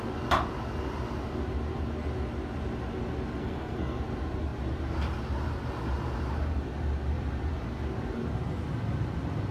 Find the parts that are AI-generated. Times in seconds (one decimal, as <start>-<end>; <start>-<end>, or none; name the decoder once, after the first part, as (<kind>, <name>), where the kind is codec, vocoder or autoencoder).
3.4-4.0 (codec, SNAC)